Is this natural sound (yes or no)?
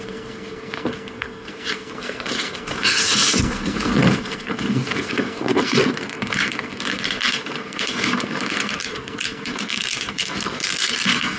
no